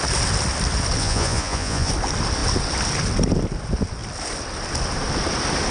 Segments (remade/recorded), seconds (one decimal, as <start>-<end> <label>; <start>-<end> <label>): 0.0-1.0 recorded; 1.0-1.9 remade; 1.9-5.7 recorded

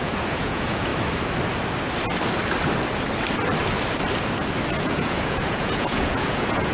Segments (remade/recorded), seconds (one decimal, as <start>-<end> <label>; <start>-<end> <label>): 0.0-0.9 remade; 0.9-4.8 recorded; 4.8-6.7 remade

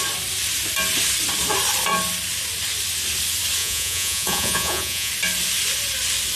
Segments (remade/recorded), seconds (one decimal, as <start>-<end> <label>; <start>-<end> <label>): 0.0-3.6 recorded; 3.6-5.1 remade; 5.1-6.4 recorded